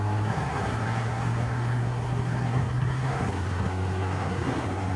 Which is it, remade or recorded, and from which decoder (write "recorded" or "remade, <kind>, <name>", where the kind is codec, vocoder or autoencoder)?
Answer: remade, codec, SNAC